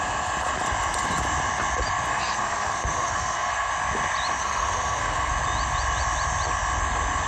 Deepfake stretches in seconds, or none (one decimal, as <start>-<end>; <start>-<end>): 2.1-3.7; 4.4-5.3